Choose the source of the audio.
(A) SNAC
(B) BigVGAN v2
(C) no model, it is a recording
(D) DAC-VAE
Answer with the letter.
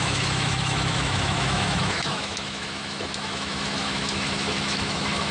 D